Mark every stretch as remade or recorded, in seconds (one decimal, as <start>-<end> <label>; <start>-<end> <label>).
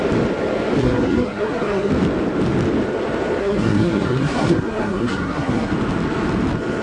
0.0-0.8 recorded; 0.8-1.9 remade; 1.9-3.4 recorded; 3.4-5.7 remade; 5.7-6.8 recorded